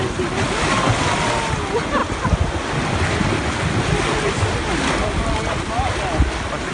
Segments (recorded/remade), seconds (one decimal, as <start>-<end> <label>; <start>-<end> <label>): 0.0-6.7 recorded